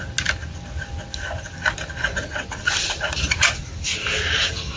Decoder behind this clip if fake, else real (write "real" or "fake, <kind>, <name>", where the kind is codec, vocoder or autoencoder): real